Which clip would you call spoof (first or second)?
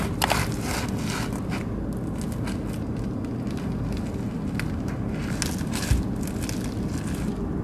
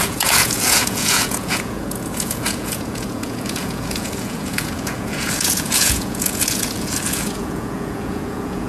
second